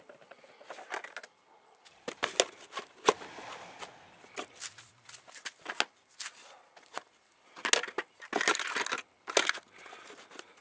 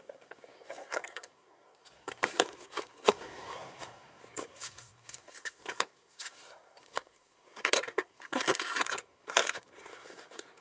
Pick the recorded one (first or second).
first